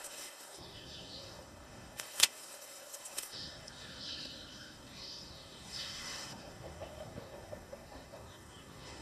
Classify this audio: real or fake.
fake